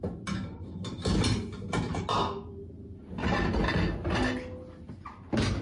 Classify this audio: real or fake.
real